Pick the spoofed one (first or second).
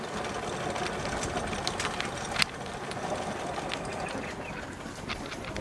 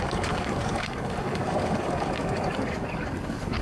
second